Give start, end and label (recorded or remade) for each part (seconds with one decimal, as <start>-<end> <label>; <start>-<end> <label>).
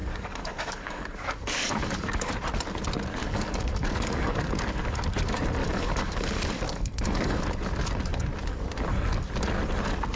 0.0-2.3 remade; 2.3-3.2 recorded; 3.2-4.4 remade; 4.4-5.6 recorded; 5.6-7.4 remade; 7.4-10.2 recorded